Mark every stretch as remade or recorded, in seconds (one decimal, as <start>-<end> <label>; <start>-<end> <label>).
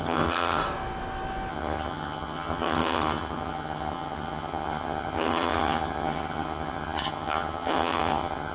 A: 0.0-0.6 remade; 0.6-1.5 recorded; 1.5-8.5 remade